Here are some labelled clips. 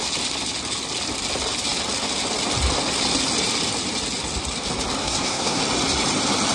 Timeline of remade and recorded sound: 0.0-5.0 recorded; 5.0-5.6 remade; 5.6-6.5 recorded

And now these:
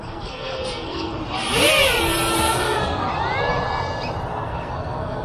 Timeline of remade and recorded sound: 0.0-1.2 remade; 1.2-2.4 recorded; 2.4-3.1 remade; 3.1-4.4 recorded; 4.4-5.2 remade

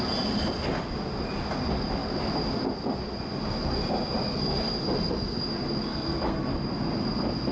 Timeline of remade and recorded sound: 0.0-5.9 recorded; 5.9-6.5 remade; 6.5-7.5 recorded

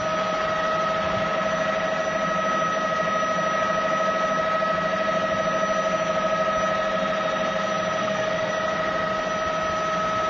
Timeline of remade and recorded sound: 0.0-8.0 recorded; 8.0-8.5 remade; 8.5-10.3 recorded

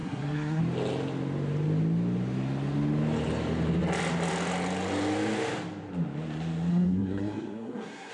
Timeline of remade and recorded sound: 0.0-0.6 remade; 0.6-6.7 recorded; 6.7-8.1 remade

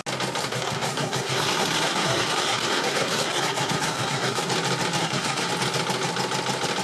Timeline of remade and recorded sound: 0.0-0.4 recorded; 0.4-4.5 remade; 4.5-5.0 recorded; 5.0-5.5 remade; 5.5-6.8 recorded

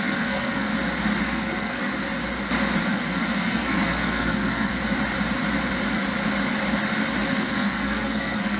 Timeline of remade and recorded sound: 0.0-0.7 remade; 0.7-1.2 recorded; 1.2-1.9 remade; 1.9-2.9 recorded; 2.9-4.7 remade; 4.7-7.3 recorded; 7.3-8.6 remade